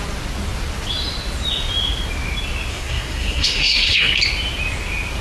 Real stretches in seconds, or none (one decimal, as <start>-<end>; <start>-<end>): 0.0-2.7; 4.1-5.2